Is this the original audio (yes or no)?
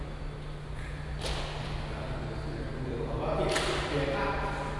yes